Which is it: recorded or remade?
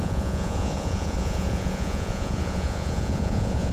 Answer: remade